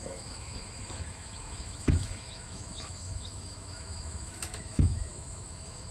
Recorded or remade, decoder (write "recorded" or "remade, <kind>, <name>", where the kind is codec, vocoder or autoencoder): remade, autoencoder, DAC-VAE